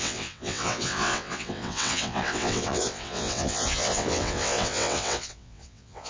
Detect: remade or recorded remade